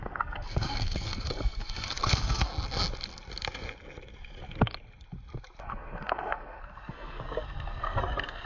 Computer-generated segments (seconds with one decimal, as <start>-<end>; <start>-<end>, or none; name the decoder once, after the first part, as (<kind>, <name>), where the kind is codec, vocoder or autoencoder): 0.0-2.5 (codec, SNAC); 5.6-8.5